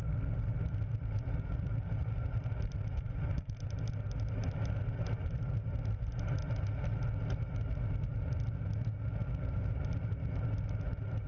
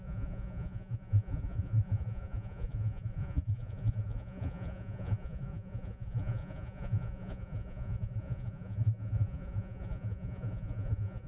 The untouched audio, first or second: first